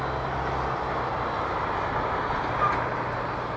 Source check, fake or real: real